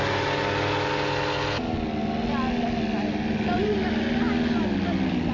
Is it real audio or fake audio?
real